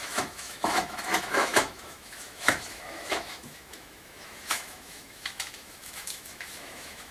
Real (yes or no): no